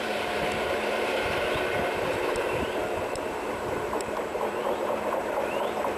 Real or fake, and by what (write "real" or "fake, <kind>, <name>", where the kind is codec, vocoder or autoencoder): fake, vocoder, BigVGAN v2